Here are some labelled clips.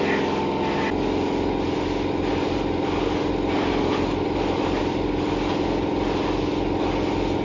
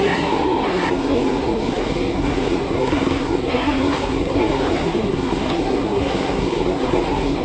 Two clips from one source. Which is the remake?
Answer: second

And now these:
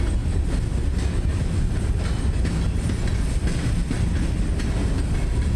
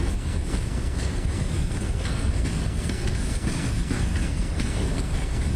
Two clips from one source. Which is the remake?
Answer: second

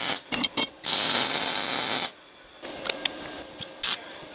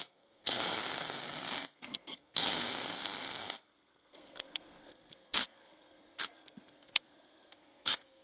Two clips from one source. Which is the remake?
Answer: second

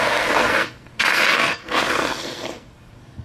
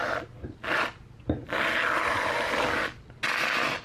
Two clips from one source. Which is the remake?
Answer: first